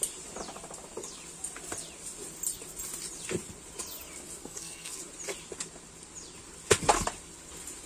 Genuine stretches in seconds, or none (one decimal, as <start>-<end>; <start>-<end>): 0.0-4.4; 5.0-7.9